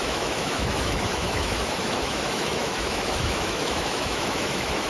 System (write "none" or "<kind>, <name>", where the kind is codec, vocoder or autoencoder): autoencoder, DAC-VAE